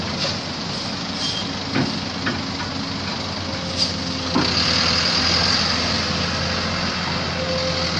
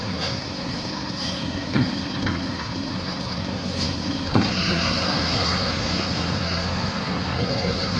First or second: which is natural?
first